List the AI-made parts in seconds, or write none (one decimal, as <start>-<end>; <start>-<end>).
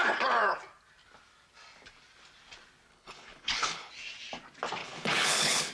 2.9-3.9; 4.8-5.7